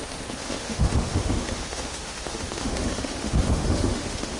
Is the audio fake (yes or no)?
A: yes